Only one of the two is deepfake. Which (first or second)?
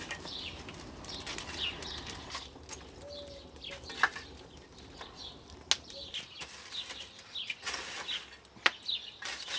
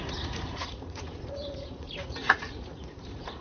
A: second